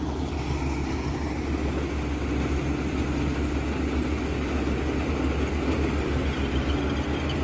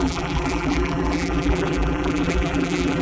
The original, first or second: first